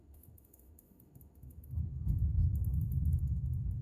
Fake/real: fake